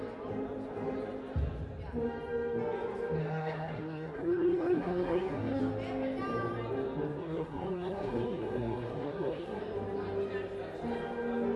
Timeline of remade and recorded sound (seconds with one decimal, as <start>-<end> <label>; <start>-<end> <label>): 0.0-3.2 recorded; 3.2-5.6 remade; 5.6-7.2 recorded; 7.2-9.6 remade; 9.6-11.6 recorded